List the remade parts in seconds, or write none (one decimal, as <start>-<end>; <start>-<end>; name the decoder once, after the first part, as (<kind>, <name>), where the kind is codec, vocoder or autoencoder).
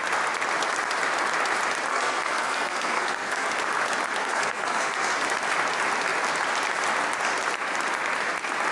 1.9-3.5 (codec, SNAC); 4.2-5.1